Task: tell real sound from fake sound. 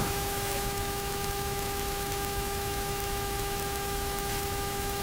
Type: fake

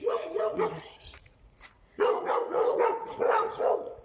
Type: fake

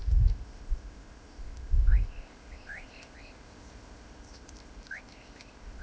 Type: fake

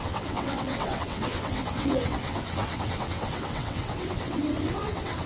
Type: fake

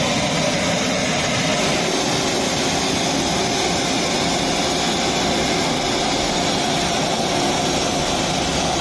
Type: real